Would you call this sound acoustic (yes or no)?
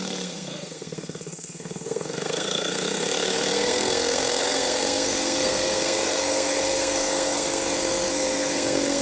no